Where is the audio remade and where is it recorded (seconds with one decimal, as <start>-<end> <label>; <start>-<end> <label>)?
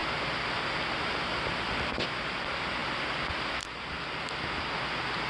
0.0-5.3 recorded